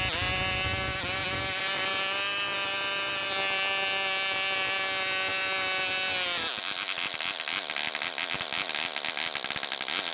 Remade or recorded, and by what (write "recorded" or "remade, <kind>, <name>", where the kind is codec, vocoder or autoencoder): recorded